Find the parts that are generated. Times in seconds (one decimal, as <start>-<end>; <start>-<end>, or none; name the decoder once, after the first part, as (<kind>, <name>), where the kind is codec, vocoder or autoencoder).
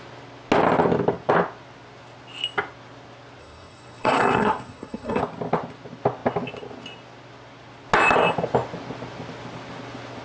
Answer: 3.4-5.2 (codec, SNAC)